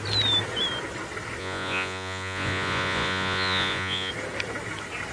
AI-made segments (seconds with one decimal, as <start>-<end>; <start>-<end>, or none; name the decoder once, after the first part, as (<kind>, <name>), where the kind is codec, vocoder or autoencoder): 1.4-4.1 (vocoder, Vocos)